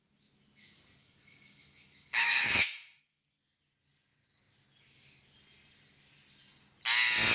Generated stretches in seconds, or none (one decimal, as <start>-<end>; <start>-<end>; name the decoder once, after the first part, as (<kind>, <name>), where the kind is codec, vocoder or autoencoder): 1.0-3.2 (autoencoder, DAC-VAE)